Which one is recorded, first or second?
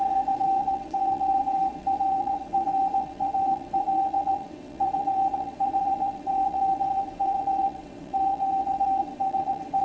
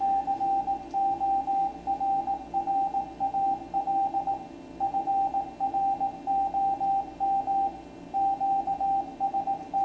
second